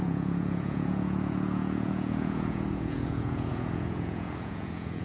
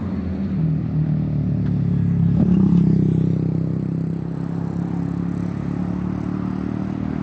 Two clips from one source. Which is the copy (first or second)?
first